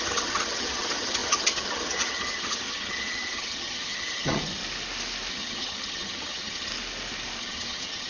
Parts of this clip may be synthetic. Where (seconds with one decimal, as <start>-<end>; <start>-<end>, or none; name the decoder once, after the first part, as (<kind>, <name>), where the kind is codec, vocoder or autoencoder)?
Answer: 0.0-4.6 (vocoder, HiFi-GAN); 5.3-6.7; 7.4-8.1